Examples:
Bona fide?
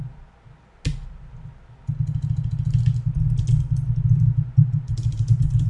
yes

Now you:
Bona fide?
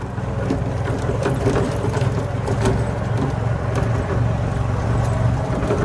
yes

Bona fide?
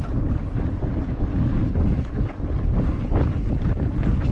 yes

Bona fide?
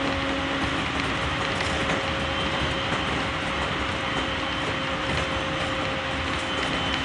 yes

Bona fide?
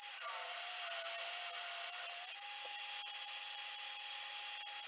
yes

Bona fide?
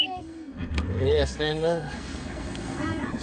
no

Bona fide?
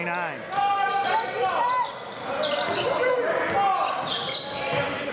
yes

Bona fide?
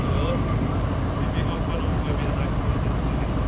yes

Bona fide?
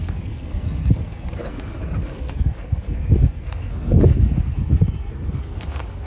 no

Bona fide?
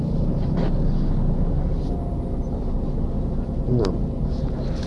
yes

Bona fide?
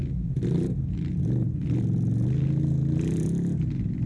yes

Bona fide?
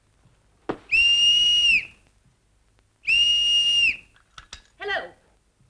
yes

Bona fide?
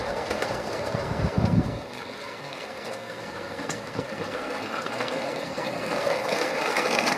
no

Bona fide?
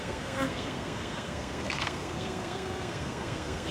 no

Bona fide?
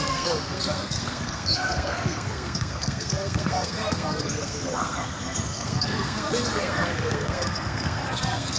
no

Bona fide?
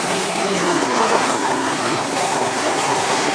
no